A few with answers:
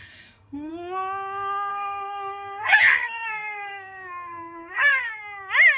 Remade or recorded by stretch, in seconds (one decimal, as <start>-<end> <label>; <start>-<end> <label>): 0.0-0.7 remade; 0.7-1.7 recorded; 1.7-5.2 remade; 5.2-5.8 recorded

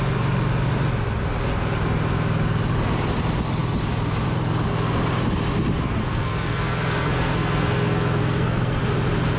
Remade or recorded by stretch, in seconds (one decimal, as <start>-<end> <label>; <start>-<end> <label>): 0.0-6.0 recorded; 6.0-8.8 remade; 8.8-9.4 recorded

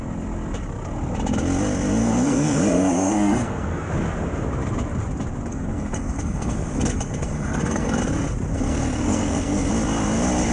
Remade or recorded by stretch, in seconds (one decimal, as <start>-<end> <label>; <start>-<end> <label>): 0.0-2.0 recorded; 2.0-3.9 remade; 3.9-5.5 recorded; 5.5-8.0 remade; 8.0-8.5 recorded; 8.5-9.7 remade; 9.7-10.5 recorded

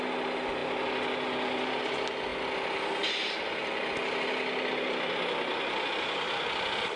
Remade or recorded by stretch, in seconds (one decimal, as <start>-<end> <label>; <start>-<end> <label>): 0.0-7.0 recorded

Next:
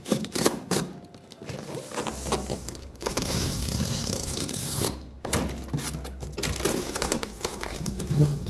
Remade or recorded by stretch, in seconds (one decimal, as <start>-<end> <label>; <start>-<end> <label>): 0.0-0.9 remade; 0.9-2.5 recorded; 2.5-5.3 remade; 5.3-6.7 recorded; 6.7-8.5 remade

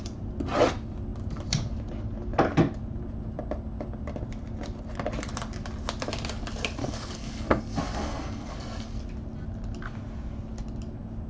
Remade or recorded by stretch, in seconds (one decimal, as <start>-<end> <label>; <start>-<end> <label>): 0.0-6.8 recorded; 6.8-9.0 remade; 9.0-11.3 recorded